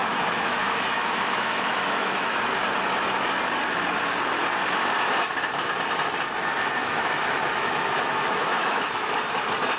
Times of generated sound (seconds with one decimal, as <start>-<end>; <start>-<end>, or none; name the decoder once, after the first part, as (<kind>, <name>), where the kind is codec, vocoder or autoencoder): 0.0-2.4 (autoencoder, DAC-VAE); 6.8-9.1